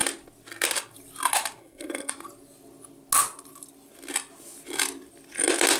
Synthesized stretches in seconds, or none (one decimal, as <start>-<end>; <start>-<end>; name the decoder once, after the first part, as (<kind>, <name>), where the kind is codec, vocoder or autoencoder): 1.6-2.1 (codec, SNAC)